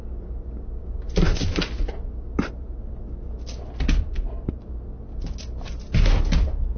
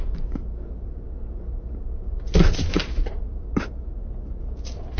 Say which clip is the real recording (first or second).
first